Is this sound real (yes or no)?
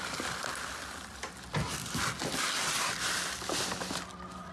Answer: yes